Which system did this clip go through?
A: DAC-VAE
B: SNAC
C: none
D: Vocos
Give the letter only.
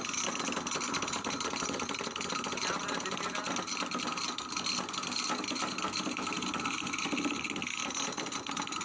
C